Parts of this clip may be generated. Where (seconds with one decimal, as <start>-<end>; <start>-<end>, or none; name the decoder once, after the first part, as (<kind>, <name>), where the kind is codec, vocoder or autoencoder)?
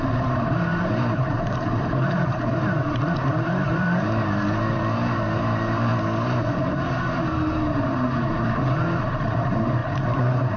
0.0-10.6 (vocoder, BigVGAN v2)